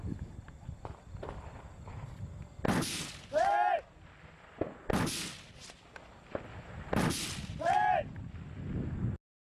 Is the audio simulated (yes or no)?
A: no